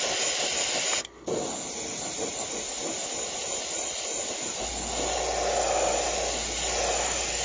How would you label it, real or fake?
real